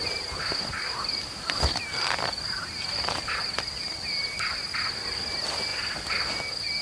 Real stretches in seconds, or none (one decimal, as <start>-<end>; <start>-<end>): 0.0-1.0; 1.8-5.7; 6.3-6.8